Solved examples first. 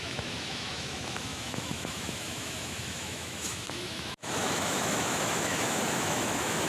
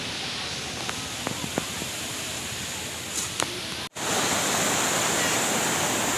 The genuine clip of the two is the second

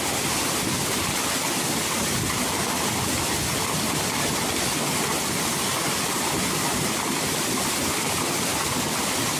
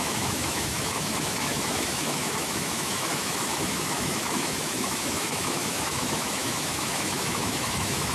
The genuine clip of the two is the first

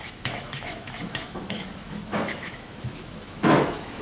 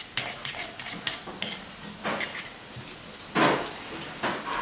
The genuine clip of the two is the second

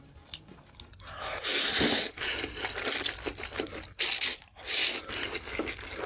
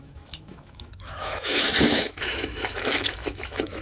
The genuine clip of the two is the first